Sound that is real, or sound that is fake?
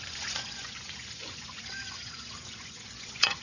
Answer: fake